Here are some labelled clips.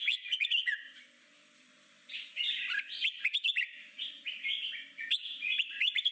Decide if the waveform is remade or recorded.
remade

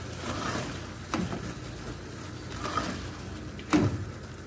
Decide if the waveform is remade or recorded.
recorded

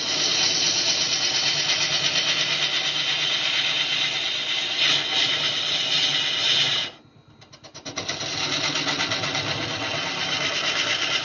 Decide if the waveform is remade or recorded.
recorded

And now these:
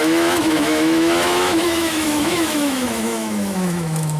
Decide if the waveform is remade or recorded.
remade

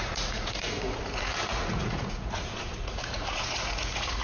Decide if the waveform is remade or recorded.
remade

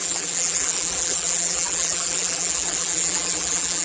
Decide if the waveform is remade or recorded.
remade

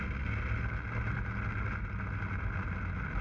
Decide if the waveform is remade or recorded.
recorded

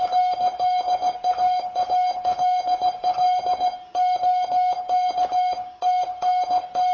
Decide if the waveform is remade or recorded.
remade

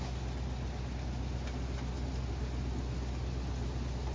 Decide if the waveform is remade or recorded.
recorded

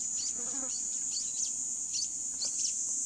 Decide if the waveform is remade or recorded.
recorded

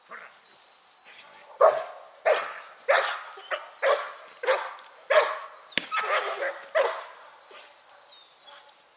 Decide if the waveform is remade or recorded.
recorded